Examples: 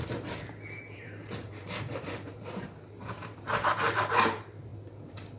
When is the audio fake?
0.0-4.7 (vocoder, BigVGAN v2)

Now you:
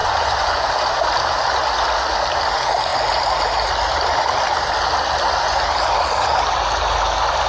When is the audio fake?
0.0-0.7 (vocoder, Vocos)

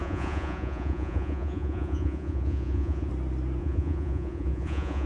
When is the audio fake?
0.0-3.1 (vocoder, Vocos); 3.6-5.1

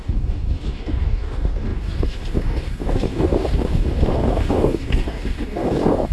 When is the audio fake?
0.0-6.1 (codec, DAC)

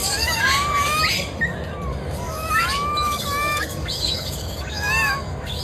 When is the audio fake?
0.0-1.0 (codec, DAC); 1.9-5.6

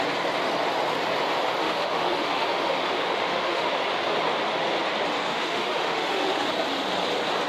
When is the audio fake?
1.6-3.7 (autoencoder, DAC-VAE); 5.3-6.5

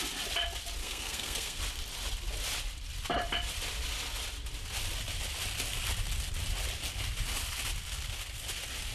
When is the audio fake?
0.8-1.6 (codec, SNAC)